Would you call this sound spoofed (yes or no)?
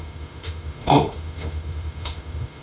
yes